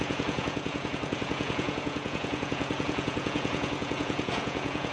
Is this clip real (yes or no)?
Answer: no